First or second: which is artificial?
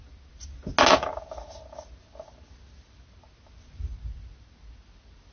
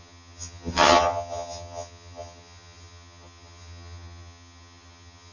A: second